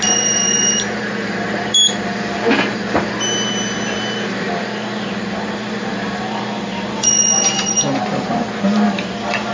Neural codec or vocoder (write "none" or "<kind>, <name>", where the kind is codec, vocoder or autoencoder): vocoder, BigVGAN v2